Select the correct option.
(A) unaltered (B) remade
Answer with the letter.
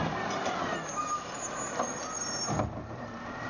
A